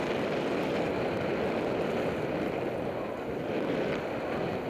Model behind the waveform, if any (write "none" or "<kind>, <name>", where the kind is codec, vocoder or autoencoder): none